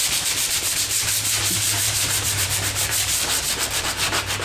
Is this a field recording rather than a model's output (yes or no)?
no